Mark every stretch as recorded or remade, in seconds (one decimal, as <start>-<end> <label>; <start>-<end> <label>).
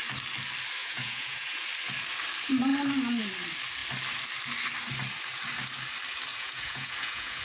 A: 0.0-0.8 recorded; 0.8-1.6 remade; 1.6-6.3 recorded; 6.3-7.4 remade